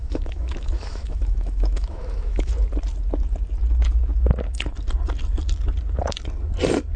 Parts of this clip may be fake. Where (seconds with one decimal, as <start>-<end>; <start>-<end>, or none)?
0.0-2.5